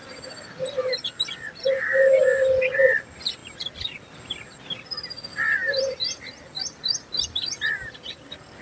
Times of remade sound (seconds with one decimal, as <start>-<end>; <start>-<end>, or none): 5.6-6.2